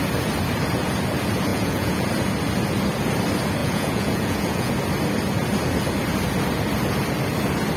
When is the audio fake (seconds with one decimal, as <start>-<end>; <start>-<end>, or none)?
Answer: 1.5-2.1; 3.6-4.7